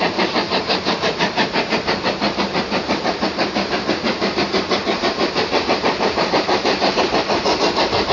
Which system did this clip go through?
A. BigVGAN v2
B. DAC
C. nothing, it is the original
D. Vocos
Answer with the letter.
A